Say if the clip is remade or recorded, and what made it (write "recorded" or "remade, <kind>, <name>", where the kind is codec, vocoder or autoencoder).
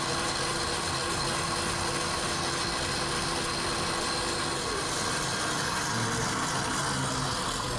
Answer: recorded